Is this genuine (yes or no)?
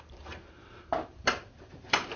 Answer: no